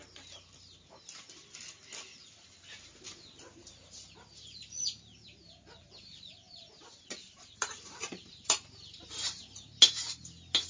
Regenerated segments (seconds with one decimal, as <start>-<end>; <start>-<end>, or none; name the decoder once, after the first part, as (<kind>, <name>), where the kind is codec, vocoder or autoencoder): 7.2-9.4 (vocoder, BigVGAN v2)

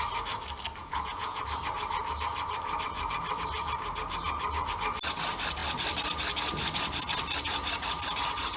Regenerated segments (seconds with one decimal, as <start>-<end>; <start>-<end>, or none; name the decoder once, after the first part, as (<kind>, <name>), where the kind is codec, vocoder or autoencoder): 0.8-1.4 (vocoder, Vocos)

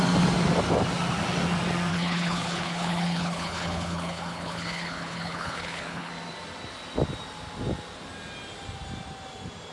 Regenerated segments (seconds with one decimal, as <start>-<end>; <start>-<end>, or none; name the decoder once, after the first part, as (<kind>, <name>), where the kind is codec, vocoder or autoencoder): 1.9-6.1 (codec, HILCodec)

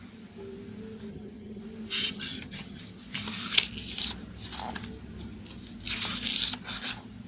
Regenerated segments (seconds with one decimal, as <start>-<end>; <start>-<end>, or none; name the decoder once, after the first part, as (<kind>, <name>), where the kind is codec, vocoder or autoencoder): 1.1-1.6 (vocoder, HiFi-GAN); 2.0-2.8

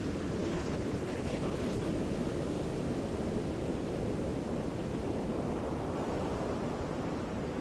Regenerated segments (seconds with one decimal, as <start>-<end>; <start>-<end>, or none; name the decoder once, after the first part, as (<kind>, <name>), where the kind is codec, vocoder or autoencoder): 0.4-1.9 (codec, HILCodec)

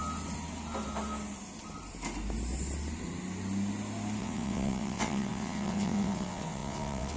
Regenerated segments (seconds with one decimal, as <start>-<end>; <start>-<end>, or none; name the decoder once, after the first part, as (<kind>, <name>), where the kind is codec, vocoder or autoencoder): 4.2-7.2 (vocoder, WaveNeXt)

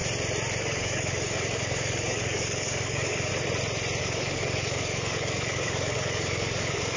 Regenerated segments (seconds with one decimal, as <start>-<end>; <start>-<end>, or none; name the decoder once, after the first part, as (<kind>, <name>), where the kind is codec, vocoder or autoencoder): 0.6-3.3 (codec, DAC); 4.0-7.0

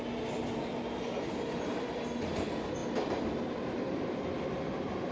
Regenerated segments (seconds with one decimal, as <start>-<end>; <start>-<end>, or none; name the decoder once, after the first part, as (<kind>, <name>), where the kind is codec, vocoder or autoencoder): none